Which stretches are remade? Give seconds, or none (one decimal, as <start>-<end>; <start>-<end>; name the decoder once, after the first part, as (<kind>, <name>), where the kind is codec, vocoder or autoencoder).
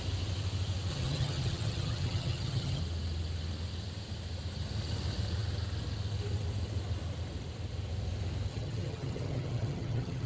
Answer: 0.9-2.8 (vocoder, HiFi-GAN); 8.5-10.3